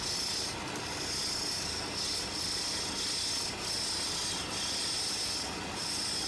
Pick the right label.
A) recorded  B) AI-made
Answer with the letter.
A